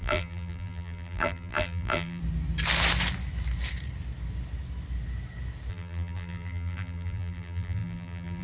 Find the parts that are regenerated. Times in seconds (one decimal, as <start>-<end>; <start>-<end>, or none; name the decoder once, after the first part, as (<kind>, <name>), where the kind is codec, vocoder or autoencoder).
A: 0.0-2.2 (vocoder, BigVGAN v2); 5.7-8.4